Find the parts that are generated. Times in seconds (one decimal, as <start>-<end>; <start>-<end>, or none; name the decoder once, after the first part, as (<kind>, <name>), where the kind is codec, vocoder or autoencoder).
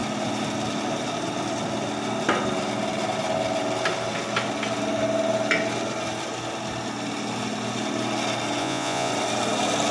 8.6-9.1 (vocoder, Vocos)